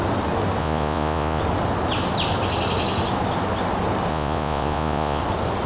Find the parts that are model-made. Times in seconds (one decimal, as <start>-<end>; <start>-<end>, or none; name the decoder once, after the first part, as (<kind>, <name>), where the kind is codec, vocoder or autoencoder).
0.6-1.4 (vocoder, Vocos); 4.1-5.2